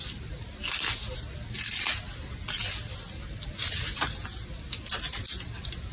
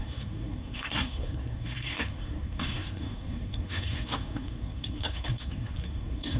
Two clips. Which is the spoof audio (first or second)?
second